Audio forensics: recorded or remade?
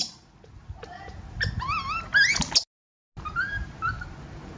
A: recorded